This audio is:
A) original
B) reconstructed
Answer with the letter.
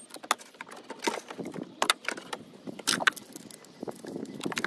A